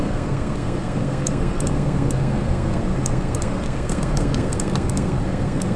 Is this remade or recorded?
remade